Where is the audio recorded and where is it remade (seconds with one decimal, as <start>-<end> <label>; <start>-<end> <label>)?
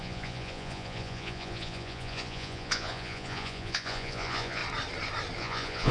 0.0-4.6 remade; 4.6-5.4 recorded; 5.4-5.9 remade